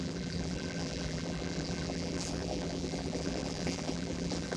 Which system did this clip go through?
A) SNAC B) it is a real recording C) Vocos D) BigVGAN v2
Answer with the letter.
D